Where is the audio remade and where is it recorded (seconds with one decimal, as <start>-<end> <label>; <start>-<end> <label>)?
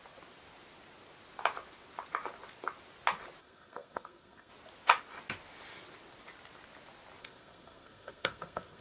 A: 0.0-3.4 recorded; 3.4-4.5 remade; 4.5-7.2 recorded; 7.2-8.8 remade